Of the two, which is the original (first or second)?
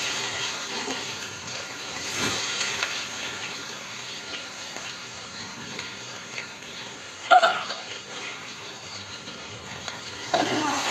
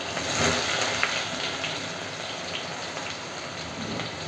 second